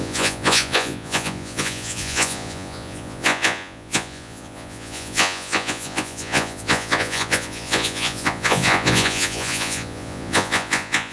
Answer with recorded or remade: remade